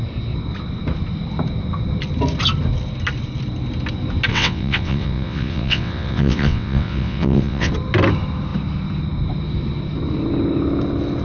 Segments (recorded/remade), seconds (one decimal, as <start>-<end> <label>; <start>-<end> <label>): 0.0-4.3 recorded; 4.3-7.7 remade; 7.7-11.2 recorded

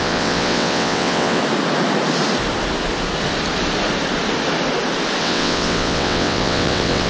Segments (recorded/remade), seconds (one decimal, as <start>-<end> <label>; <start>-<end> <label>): 0.0-1.4 remade; 1.4-5.2 recorded; 5.2-7.1 remade

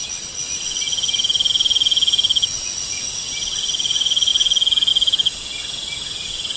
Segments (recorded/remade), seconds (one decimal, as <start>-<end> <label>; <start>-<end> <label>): 0.0-6.6 recorded

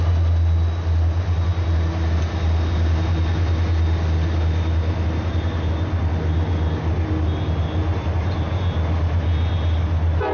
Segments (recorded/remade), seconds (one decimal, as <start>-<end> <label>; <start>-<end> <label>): 0.0-10.3 recorded